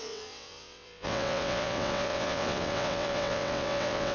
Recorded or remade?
remade